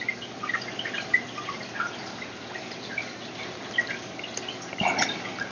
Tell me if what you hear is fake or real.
real